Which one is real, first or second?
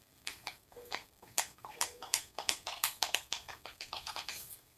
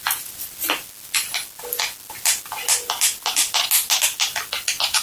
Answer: second